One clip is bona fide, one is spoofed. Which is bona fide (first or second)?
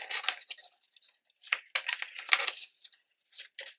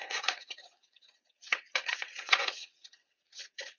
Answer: first